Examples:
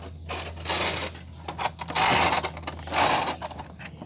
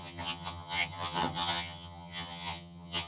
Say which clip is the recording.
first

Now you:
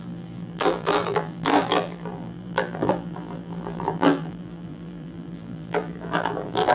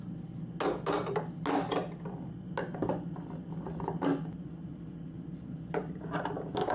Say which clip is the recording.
second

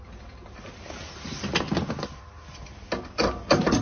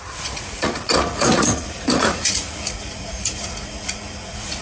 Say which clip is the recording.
first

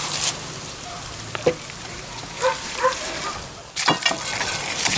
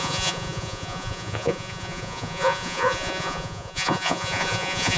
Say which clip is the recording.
first